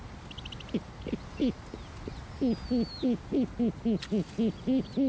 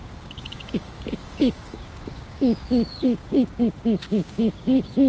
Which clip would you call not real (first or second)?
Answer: second